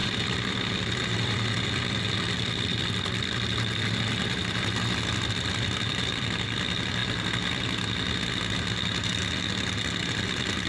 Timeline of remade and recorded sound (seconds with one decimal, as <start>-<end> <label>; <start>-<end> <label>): 0.0-7.0 remade; 7.0-10.1 recorded; 10.1-10.7 remade